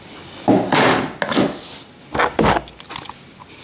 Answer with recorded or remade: recorded